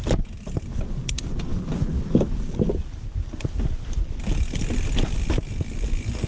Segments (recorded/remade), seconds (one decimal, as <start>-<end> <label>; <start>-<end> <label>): 0.0-6.3 recorded